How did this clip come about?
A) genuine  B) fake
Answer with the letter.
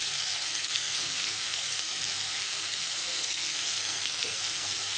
B